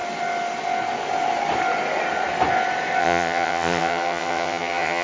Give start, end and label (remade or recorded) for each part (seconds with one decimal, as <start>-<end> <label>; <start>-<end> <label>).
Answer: 0.0-3.0 recorded; 3.0-5.0 remade